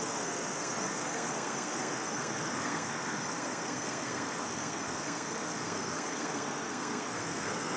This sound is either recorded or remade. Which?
remade